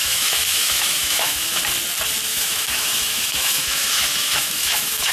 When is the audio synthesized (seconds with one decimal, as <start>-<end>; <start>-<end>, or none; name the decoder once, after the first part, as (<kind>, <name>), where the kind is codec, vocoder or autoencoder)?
0.0-1.6 (autoencoder, DAC-VAE); 2.3-5.1